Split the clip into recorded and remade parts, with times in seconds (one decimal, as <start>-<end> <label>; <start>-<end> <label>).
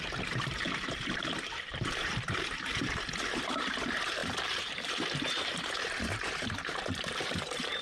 0.0-7.8 remade